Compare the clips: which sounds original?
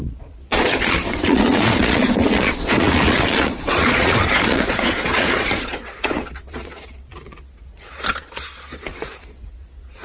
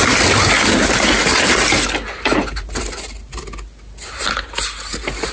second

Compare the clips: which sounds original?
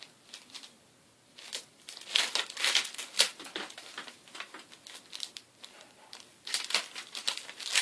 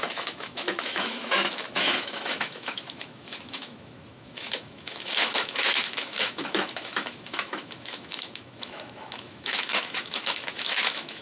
first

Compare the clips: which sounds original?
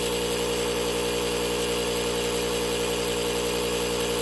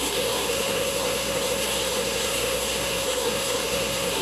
first